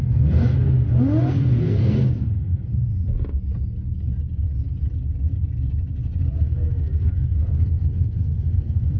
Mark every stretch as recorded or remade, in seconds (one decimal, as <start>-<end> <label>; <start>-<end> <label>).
0.0-0.4 remade; 0.4-1.3 recorded; 1.3-2.9 remade; 2.9-6.4 recorded; 6.4-9.0 remade